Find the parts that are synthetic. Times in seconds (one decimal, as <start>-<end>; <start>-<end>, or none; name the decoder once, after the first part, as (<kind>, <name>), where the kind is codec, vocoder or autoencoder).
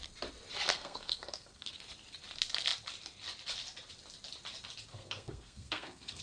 0.7-1.7 (codec, SNAC); 4.9-6.2